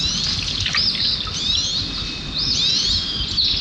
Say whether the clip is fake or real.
real